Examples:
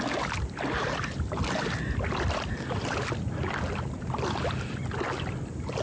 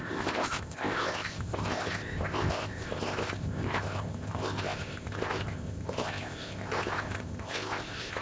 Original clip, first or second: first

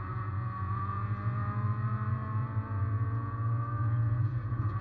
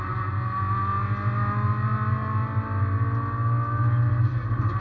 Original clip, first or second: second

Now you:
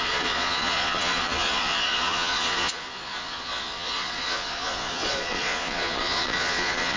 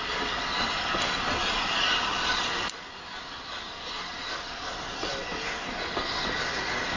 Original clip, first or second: second